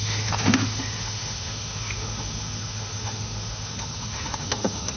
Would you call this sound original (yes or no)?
no